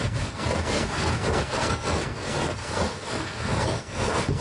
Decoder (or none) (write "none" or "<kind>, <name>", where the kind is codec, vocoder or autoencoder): codec, SNAC